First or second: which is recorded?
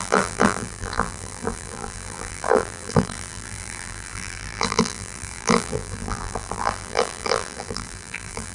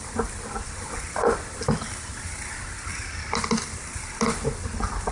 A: second